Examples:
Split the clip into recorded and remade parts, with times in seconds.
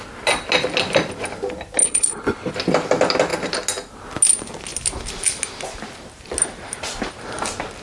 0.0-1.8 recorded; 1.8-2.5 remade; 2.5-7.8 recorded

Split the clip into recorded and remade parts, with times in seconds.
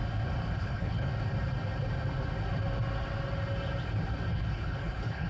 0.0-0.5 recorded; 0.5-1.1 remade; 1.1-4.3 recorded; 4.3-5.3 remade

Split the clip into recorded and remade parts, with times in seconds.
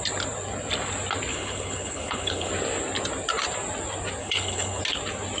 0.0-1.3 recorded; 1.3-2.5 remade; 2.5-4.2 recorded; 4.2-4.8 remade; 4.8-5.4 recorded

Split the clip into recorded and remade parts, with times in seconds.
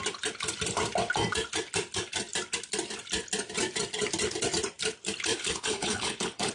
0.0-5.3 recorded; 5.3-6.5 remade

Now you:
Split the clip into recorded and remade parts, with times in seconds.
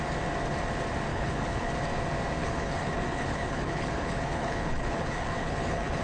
0.0-1.1 recorded; 1.1-1.7 remade; 1.7-2.4 recorded; 2.4-6.0 remade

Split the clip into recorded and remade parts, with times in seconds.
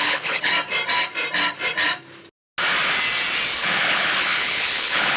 0.0-0.5 remade; 0.5-3.6 recorded; 3.6-5.2 remade